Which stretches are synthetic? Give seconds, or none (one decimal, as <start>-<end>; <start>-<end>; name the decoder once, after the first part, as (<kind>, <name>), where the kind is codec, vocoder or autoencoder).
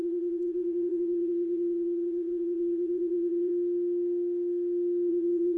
0.0-3.5 (vocoder, WaveNeXt); 5.1-5.6